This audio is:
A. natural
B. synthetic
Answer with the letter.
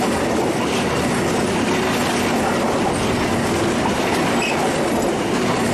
A